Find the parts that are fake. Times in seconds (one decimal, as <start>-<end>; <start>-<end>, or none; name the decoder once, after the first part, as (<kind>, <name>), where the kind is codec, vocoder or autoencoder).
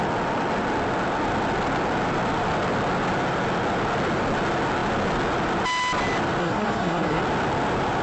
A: 6.4-7.2 (codec, SNAC)